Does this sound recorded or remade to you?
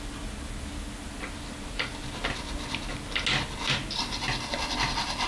recorded